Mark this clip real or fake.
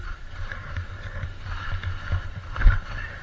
real